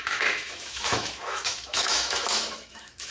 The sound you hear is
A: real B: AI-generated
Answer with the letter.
B